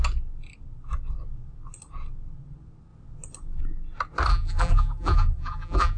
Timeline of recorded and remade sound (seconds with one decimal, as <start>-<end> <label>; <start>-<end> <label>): 0.0-4.3 recorded; 4.3-6.0 remade